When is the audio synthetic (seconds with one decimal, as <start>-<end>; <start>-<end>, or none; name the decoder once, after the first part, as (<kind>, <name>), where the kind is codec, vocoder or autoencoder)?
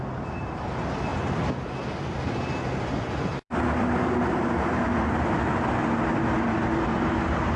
0.0-7.6 (vocoder, BigVGAN v2)